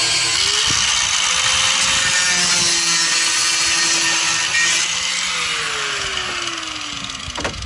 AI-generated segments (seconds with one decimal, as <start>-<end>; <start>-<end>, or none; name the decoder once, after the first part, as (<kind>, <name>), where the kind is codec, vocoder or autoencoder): none